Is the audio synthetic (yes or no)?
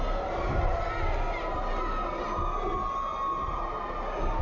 no